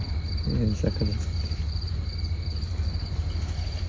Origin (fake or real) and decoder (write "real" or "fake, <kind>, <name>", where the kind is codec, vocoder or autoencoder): real